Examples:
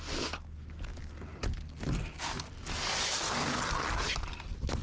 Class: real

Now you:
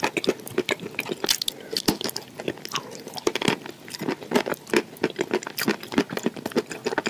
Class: real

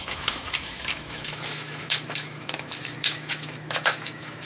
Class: fake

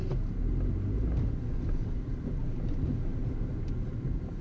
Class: real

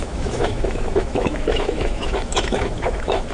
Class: fake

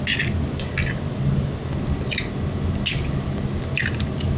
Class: real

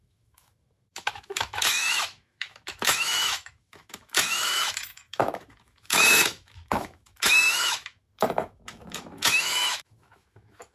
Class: fake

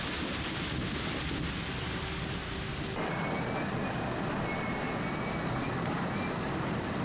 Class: real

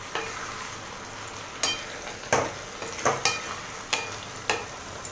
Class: real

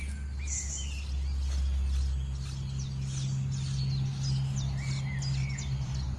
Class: real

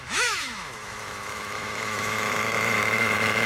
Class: fake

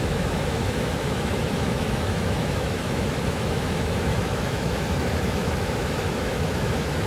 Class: fake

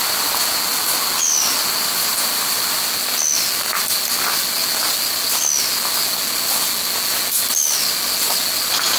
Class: real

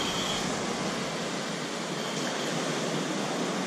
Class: real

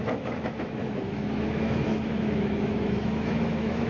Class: fake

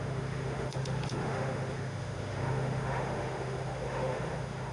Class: fake